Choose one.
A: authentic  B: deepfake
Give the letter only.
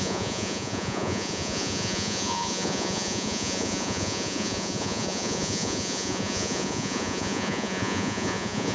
B